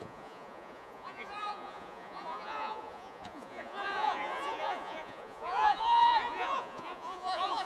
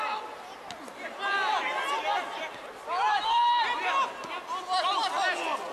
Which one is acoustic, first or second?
second